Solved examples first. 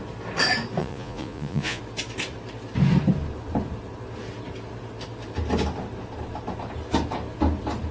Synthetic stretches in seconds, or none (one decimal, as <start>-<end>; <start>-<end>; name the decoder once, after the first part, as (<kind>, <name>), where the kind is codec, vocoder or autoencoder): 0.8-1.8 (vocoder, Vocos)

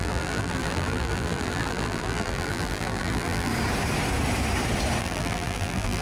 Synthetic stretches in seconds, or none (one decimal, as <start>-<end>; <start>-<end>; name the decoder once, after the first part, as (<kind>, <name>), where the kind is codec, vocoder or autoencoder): 0.0-3.5 (vocoder, BigVGAN v2); 5.0-6.0

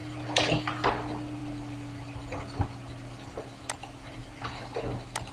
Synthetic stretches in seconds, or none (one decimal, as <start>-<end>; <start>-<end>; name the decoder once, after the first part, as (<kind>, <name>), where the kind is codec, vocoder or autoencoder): none

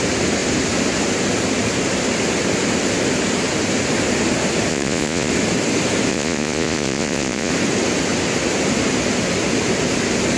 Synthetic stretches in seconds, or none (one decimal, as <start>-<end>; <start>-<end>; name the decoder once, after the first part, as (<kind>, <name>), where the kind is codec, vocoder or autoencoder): 4.7-5.3 (vocoder, Vocos); 6.1-7.5